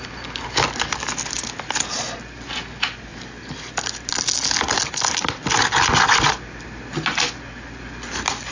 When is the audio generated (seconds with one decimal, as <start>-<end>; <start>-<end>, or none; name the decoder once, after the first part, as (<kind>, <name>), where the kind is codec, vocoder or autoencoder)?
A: none